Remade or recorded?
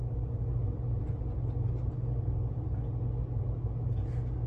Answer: recorded